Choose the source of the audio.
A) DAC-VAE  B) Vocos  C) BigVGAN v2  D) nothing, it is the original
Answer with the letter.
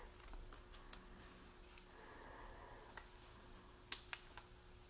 D